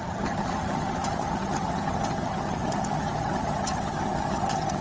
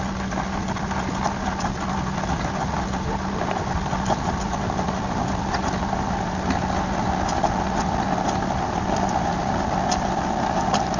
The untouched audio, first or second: second